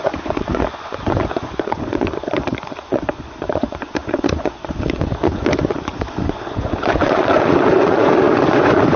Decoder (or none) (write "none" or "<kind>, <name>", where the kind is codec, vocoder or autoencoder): vocoder, Vocos